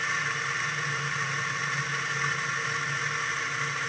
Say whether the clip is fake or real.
real